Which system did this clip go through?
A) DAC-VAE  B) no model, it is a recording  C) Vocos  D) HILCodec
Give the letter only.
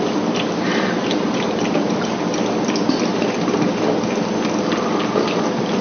B